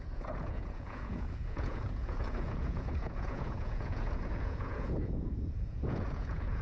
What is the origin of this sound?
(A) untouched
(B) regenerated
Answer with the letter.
B